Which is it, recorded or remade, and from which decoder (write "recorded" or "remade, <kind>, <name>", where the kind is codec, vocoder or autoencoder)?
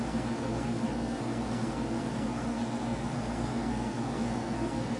remade, codec, SNAC